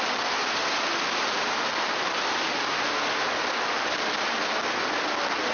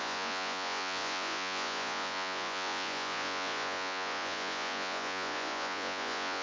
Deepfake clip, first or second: second